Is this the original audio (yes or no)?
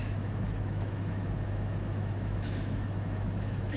no